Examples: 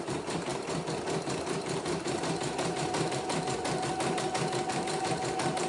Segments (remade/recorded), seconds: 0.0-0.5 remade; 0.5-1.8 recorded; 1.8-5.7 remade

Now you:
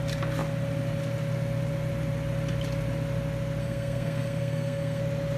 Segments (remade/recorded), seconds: 0.0-3.6 recorded; 3.6-5.0 remade; 5.0-5.4 recorded

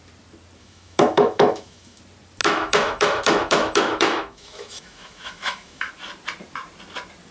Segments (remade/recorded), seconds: 0.0-0.6 recorded; 0.6-2.0 remade; 2.0-2.4 recorded; 2.4-5.9 remade; 5.9-7.3 recorded

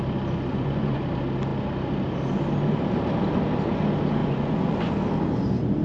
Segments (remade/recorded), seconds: 0.0-0.5 recorded; 0.5-1.0 remade; 1.0-4.2 recorded; 4.2-4.9 remade; 4.9-5.8 recorded

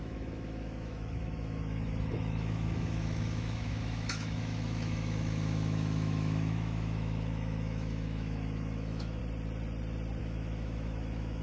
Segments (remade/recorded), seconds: 0.0-9.2 remade; 9.2-10.2 recorded; 10.2-11.4 remade

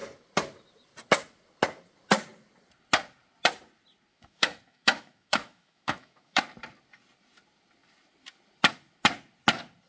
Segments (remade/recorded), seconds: 0.0-4.1 recorded; 4.1-6.4 remade; 6.4-9.9 recorded